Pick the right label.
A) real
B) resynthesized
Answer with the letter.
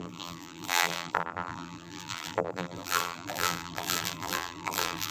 B